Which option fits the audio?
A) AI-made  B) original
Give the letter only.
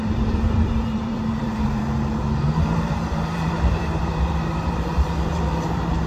A